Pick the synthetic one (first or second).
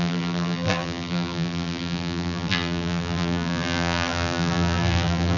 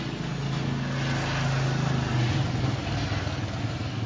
first